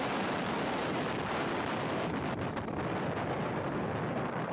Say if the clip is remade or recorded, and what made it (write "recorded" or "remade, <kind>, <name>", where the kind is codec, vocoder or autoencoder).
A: recorded